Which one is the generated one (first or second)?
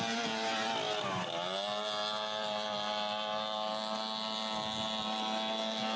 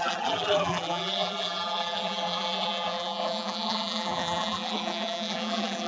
second